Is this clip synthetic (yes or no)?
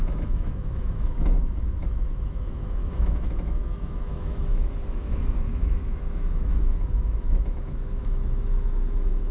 yes